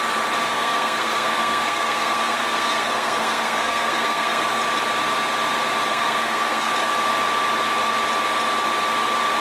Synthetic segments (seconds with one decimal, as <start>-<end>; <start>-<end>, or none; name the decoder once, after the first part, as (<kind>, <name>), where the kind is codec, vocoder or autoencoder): 0.4-4.6 (codec, SNAC); 5.9-6.7